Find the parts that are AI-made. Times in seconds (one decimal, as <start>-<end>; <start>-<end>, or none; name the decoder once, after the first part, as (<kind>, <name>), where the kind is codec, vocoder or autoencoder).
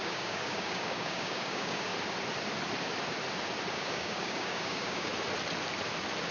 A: 0.0-1.9 (codec, DAC); 3.7-5.1